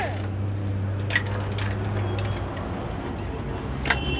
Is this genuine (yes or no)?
yes